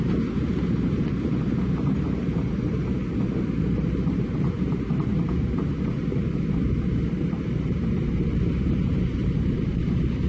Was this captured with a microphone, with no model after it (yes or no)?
no